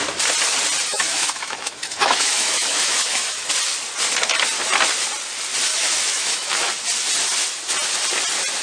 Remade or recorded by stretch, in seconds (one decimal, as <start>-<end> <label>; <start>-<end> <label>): 0.0-0.9 recorded; 0.9-3.5 remade; 3.5-5.7 recorded; 5.7-6.7 remade; 6.7-8.6 recorded